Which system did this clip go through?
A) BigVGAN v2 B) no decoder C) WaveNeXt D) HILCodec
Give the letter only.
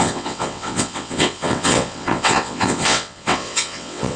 C